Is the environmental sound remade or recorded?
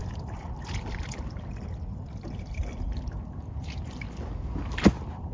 recorded